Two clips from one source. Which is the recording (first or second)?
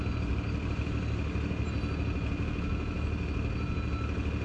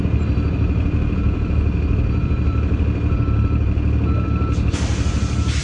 first